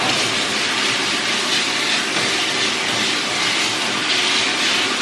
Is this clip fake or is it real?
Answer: real